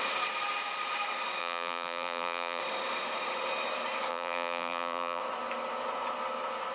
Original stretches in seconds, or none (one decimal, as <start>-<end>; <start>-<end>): 0.0-1.4; 2.6-4.1; 5.2-6.7